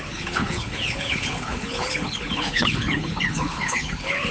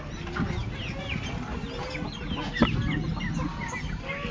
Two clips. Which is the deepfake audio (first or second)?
first